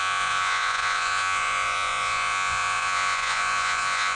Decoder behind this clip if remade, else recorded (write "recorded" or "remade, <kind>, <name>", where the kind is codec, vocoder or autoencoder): remade, vocoder, Vocos